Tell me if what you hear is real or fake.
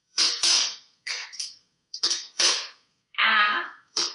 fake